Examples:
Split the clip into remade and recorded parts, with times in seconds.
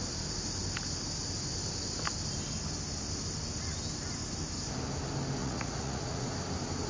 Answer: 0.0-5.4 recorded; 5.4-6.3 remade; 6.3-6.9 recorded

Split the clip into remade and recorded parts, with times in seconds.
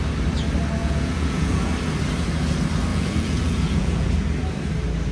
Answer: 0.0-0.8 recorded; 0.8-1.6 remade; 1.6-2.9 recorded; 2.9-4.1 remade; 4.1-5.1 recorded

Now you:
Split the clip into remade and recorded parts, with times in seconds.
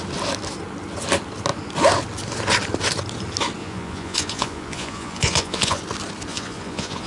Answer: 0.0-3.6 recorded; 3.6-5.8 remade; 5.8-6.3 recorded; 6.3-7.1 remade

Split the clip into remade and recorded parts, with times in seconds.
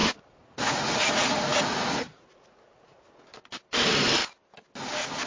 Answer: 0.0-3.2 remade; 3.2-5.3 recorded